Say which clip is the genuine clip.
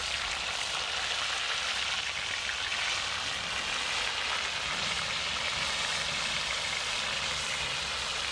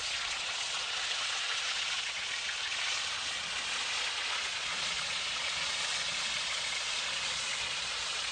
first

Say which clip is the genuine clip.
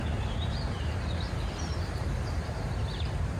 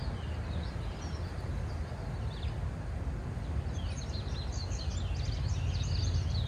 second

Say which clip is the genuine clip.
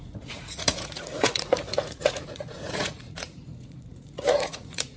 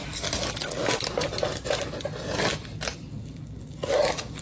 second